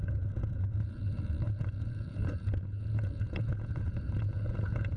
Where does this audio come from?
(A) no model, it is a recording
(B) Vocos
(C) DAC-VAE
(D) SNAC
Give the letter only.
B